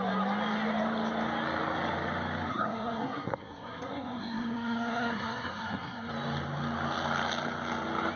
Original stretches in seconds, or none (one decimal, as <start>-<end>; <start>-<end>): 0.0-2.5; 6.1-8.2